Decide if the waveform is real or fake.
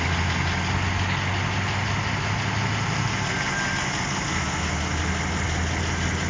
real